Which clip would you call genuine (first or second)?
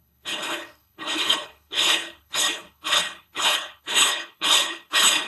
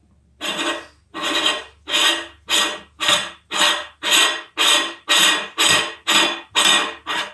second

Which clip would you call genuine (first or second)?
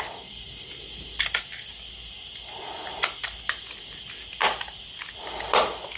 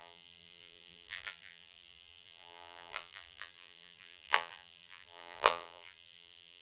first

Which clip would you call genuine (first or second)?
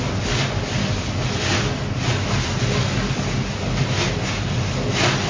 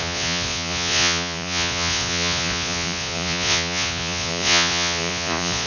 first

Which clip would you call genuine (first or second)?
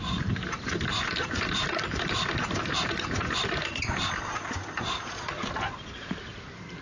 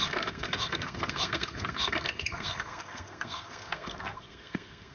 first